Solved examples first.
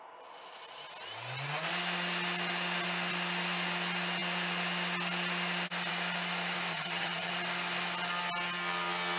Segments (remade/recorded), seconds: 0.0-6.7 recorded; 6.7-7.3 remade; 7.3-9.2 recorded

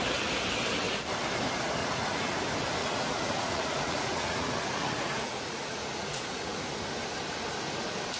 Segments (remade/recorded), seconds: 0.0-1.8 recorded; 1.8-2.4 remade; 2.4-2.8 recorded; 2.8-6.7 remade; 6.7-8.2 recorded